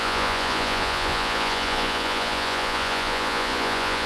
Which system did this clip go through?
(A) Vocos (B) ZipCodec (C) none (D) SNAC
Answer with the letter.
A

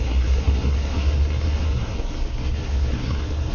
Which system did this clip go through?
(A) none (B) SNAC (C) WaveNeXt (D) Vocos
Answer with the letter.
B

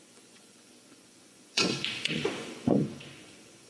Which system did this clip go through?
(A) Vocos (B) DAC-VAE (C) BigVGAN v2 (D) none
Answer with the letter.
A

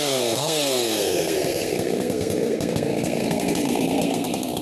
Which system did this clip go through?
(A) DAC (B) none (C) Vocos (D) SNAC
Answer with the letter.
D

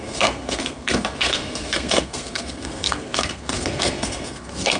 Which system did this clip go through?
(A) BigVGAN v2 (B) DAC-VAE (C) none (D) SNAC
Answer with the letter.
D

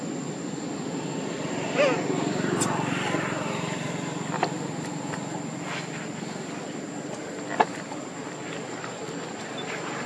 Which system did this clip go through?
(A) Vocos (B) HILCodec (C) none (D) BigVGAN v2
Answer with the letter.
C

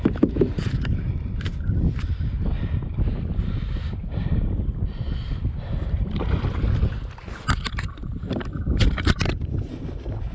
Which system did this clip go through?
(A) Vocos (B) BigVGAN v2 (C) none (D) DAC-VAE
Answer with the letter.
C